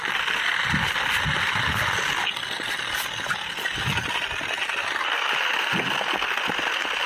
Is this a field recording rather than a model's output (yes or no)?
yes